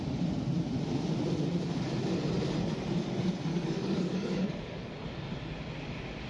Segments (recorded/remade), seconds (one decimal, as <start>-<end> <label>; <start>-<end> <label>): 0.0-3.5 recorded; 3.5-4.9 remade; 4.9-6.3 recorded